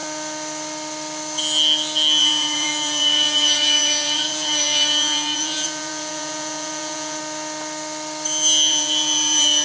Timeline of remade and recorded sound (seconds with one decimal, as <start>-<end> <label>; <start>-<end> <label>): 0.0-2.2 recorded; 2.2-7.2 remade; 7.2-8.7 recorded; 8.7-9.6 remade

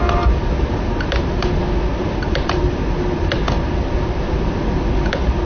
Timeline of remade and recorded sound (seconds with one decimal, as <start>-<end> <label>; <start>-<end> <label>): 0.0-5.5 recorded

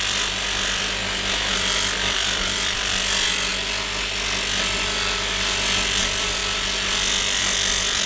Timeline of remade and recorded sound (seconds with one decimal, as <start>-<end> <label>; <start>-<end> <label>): 0.0-1.0 remade; 1.0-1.5 recorded; 1.5-3.5 remade; 3.5-6.0 recorded; 6.0-6.4 remade; 6.4-7.4 recorded; 7.4-8.1 remade

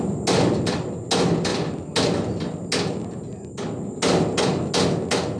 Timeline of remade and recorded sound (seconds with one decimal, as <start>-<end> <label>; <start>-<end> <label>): 0.0-5.4 recorded

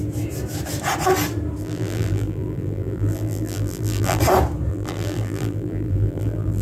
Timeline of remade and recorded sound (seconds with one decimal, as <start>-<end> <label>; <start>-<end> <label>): 0.0-1.6 recorded; 1.6-4.2 remade; 4.2-4.7 recorded; 4.7-6.6 remade

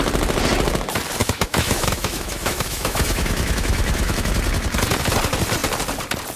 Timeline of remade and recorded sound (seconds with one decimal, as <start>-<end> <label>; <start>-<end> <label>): 0.0-1.2 recorded; 1.2-4.3 remade; 4.3-6.4 recorded

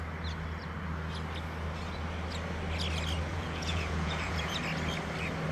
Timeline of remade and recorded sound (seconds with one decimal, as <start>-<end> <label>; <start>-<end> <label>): 0.0-3.3 recorded; 3.3-4.6 remade; 4.6-5.5 recorded